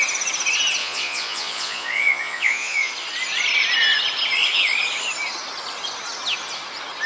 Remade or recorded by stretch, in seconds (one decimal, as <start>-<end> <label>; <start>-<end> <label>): 0.0-0.8 recorded; 0.8-2.9 remade; 2.9-7.1 recorded